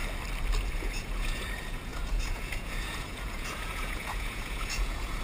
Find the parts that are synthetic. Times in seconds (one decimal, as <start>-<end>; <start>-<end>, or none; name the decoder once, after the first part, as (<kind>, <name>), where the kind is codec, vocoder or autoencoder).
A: 0.7-5.2 (vocoder, Vocos)